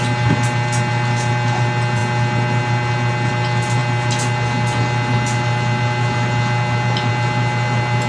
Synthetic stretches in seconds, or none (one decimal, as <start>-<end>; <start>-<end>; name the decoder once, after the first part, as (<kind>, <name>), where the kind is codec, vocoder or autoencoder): none